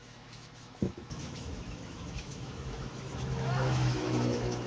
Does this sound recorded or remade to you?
remade